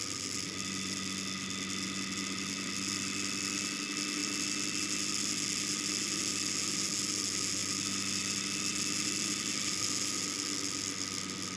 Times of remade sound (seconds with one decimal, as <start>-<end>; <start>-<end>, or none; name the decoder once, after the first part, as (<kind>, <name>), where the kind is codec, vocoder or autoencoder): none